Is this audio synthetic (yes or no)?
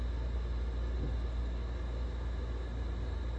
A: no